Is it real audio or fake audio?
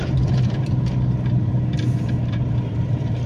fake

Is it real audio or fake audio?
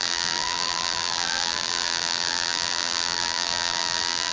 fake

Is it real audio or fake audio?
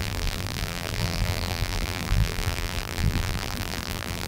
fake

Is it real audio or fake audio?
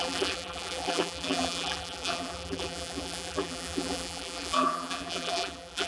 fake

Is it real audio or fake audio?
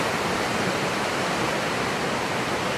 real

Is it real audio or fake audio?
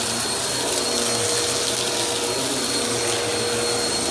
real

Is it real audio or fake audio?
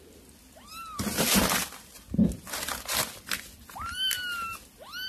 real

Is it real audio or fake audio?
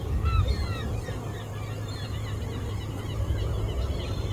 fake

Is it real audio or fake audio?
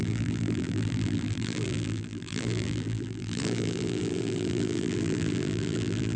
fake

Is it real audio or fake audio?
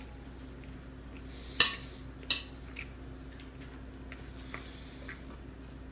real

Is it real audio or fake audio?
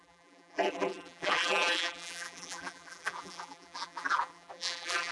fake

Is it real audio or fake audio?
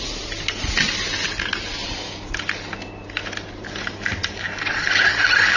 real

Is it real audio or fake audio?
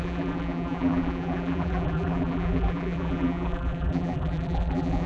fake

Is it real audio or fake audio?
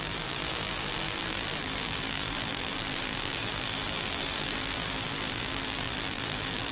fake